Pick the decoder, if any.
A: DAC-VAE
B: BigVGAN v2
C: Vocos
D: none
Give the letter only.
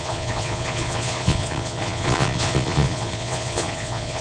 C